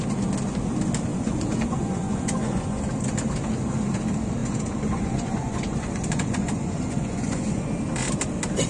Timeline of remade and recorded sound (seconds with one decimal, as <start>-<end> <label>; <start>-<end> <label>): 0.0-1.1 recorded; 1.1-2.8 remade; 2.8-4.4 recorded; 4.4-7.7 remade; 7.7-8.7 recorded